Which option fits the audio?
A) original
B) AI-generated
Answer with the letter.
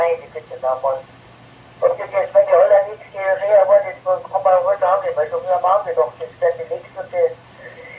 A